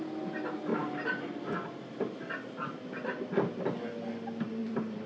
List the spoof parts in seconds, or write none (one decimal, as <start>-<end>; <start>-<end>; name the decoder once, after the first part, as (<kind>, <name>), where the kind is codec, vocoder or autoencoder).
4.6-5.1 (vocoder, BigVGAN v2)